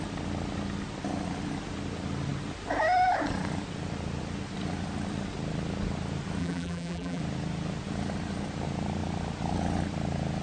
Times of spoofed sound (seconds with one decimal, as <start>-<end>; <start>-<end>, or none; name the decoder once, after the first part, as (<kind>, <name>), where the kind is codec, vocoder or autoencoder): 6.4-7.2 (vocoder, BigVGAN v2)